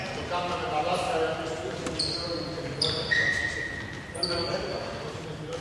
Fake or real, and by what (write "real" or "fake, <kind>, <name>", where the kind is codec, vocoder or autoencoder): real